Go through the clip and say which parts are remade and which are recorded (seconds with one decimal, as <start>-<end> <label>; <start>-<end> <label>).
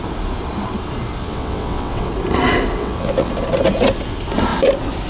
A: 0.0-1.2 recorded; 1.2-2.1 remade; 2.1-2.8 recorded; 2.8-3.3 remade; 3.3-5.1 recorded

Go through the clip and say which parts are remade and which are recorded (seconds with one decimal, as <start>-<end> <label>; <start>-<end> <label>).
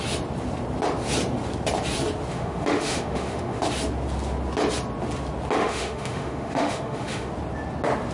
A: 0.0-2.3 recorded; 2.3-3.6 remade; 3.6-5.6 recorded; 5.6-7.3 remade; 7.3-8.1 recorded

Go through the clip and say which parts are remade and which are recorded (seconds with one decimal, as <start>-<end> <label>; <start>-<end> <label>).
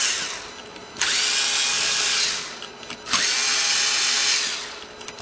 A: 0.0-1.7 recorded; 1.7-2.5 remade; 2.5-5.2 recorded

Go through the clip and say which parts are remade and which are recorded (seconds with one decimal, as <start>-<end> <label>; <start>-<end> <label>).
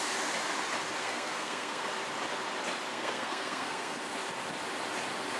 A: 0.0-1.0 recorded; 1.0-1.9 remade; 1.9-2.9 recorded; 2.9-4.0 remade; 4.0-5.4 recorded